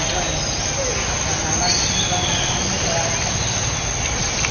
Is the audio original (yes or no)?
yes